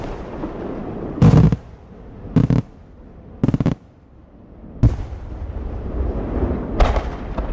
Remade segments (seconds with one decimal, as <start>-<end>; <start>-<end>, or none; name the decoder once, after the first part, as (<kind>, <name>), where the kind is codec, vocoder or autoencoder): none